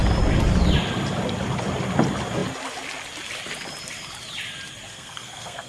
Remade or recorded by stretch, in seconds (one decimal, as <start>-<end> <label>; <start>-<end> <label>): 0.0-4.9 recorded; 4.9-5.7 remade